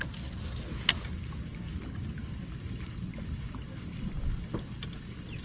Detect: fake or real real